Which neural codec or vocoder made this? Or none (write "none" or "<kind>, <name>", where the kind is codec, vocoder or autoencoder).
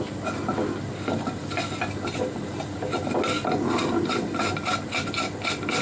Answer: none